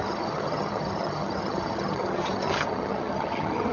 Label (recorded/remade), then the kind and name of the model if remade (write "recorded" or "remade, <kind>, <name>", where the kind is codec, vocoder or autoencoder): remade, vocoder, HiFi-GAN